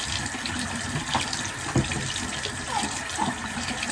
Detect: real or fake real